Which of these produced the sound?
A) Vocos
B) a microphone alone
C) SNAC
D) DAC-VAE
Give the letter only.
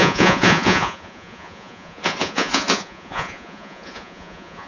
A